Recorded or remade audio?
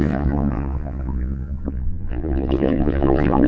remade